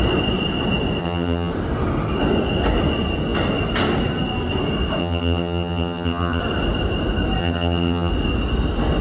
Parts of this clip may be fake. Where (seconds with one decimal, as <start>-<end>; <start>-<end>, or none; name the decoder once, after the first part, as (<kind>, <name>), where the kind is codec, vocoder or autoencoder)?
1.0-1.5 (vocoder, HiFi-GAN); 5.0-6.4; 7.4-8.1